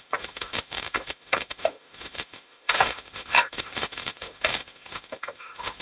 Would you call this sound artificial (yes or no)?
yes